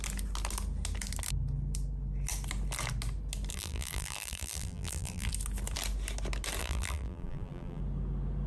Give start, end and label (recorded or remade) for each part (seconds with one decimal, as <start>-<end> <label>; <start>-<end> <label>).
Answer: 0.0-3.5 recorded; 3.5-5.3 remade; 5.3-6.6 recorded; 6.6-7.8 remade; 7.8-8.5 recorded